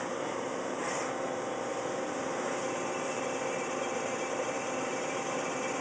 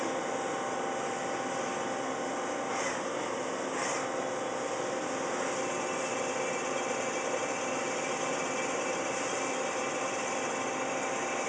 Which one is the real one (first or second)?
second